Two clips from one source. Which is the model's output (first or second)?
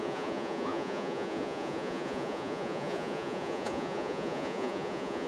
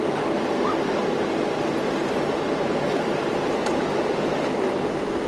first